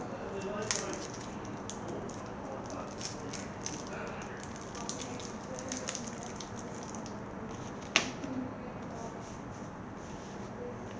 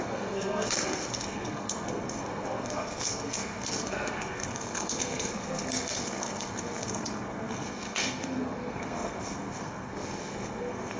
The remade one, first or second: second